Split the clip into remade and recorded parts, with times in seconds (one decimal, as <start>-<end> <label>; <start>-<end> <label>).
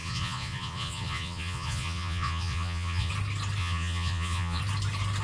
0.0-3.1 remade; 3.1-3.6 recorded; 3.6-4.6 remade; 4.6-5.2 recorded